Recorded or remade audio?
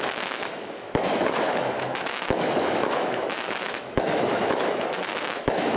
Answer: remade